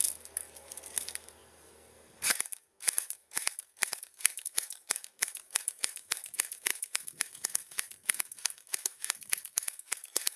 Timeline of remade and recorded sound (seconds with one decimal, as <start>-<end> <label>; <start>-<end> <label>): 0.0-10.4 remade